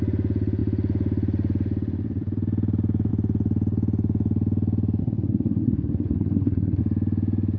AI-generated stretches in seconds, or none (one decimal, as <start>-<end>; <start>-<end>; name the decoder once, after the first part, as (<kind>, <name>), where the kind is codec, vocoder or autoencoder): 5.0-6.8 (codec, SNAC)